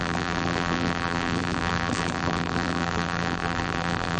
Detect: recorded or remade remade